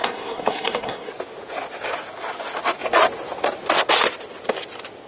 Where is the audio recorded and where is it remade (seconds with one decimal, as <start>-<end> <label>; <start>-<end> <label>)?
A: 0.0-1.1 remade; 1.1-5.1 recorded